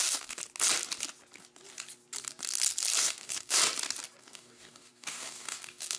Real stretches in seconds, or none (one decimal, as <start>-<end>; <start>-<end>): 0.4-3.0; 3.6-4.2